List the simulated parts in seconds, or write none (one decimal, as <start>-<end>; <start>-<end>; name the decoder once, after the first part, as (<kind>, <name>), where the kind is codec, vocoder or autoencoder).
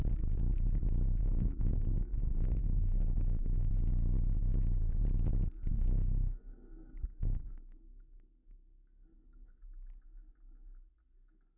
1.2-3.7 (codec, SNAC); 5.7-9.6